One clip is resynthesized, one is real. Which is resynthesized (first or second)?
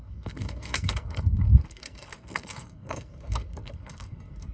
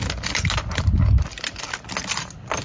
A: first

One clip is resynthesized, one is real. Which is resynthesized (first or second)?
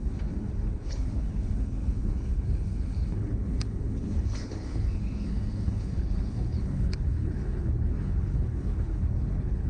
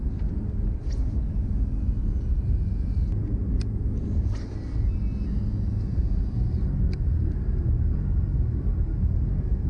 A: first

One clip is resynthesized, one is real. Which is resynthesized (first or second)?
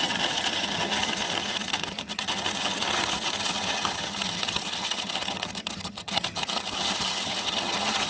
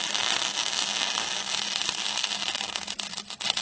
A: first